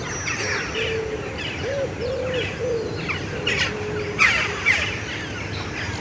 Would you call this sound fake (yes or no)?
no